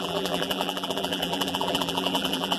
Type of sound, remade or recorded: remade